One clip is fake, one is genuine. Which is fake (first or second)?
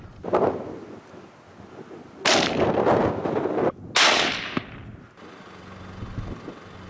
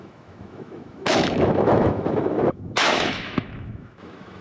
second